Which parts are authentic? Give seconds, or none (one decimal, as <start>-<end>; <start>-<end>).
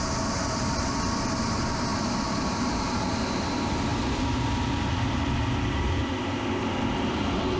0.0-7.6